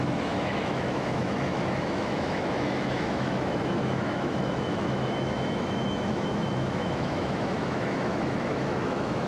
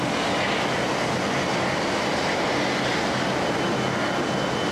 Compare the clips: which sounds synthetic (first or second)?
first